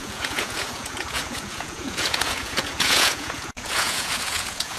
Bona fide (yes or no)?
no